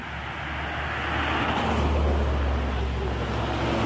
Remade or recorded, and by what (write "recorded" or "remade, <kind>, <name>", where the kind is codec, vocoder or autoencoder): recorded